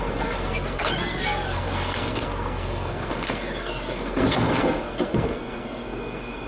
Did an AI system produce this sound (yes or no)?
yes